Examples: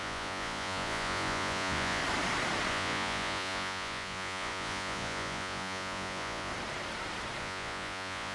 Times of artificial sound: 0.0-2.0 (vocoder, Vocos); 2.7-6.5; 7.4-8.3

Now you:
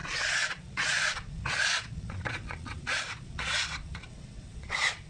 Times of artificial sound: 0.0-5.1 (vocoder, Vocos)

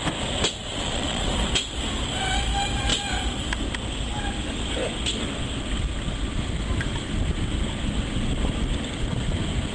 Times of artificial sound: 0.6-1.3 (vocoder, Vocos)

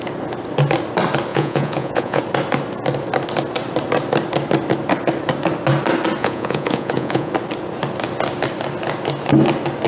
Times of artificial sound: 1.3-2.2 (vocoder, Vocos); 6.2-7.3